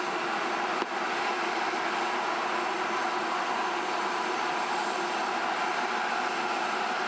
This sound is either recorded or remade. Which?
recorded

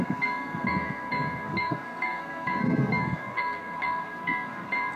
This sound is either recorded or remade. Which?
remade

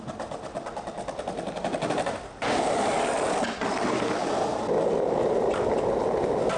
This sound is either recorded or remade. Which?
recorded